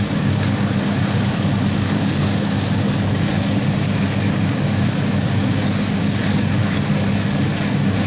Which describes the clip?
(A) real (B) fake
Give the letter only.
B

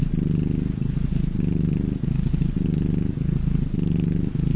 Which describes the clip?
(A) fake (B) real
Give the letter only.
B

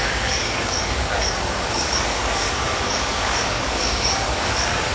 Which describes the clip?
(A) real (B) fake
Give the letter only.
B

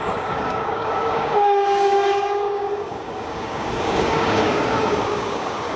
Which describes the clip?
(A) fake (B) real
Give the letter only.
A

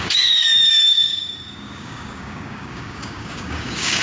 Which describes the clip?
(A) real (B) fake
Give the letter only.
B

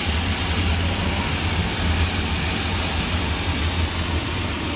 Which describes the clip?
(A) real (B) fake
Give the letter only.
A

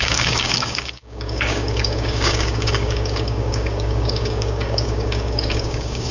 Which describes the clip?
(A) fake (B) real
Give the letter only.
A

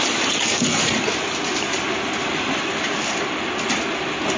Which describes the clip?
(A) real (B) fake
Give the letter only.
A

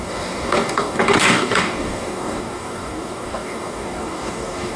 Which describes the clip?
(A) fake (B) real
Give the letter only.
A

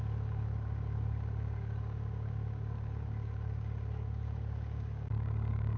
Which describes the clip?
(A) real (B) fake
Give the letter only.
B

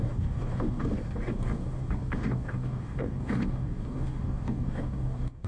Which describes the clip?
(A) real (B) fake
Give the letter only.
B